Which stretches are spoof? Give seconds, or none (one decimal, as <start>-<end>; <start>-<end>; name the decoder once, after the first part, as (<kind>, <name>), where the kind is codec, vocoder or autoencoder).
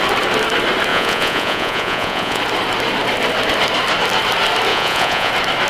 0.9-2.4 (vocoder, Vocos); 4.7-5.3